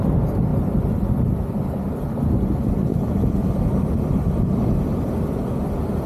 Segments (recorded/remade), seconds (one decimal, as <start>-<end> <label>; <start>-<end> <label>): 0.0-2.9 recorded; 2.9-3.5 remade; 3.5-6.1 recorded